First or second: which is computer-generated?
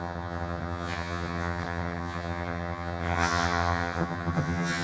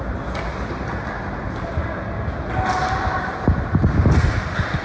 first